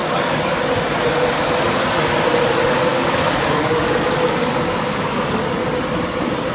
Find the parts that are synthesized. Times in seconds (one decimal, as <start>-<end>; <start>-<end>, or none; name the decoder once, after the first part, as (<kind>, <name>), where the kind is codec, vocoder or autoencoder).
0.0-0.6 (codec, DAC); 2.9-5.4